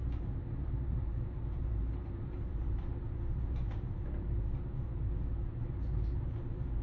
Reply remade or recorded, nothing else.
remade